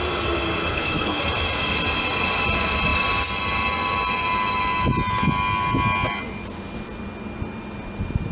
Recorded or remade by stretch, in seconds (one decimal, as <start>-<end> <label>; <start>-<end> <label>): 0.0-0.6 recorded; 0.6-1.2 remade; 1.2-8.3 recorded